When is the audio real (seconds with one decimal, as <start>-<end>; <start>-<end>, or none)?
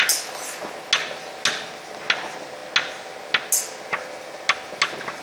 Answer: 0.0-5.2